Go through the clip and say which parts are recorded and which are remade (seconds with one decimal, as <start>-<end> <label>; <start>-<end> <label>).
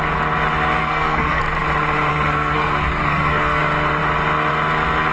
0.0-0.8 recorded; 0.8-1.4 remade; 1.4-2.1 recorded; 2.1-3.6 remade; 3.6-5.1 recorded